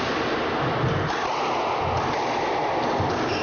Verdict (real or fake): real